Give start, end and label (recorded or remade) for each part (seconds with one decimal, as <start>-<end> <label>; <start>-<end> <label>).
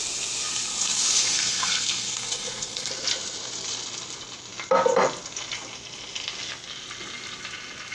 0.0-0.5 recorded; 0.5-2.9 remade; 2.9-7.9 recorded